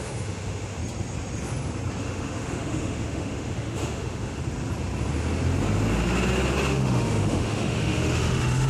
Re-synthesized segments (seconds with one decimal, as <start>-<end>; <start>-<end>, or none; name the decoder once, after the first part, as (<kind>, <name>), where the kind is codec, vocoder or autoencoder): 0.0-0.8 (autoencoder, DAC-VAE); 2.0-4.4; 6.7-8.7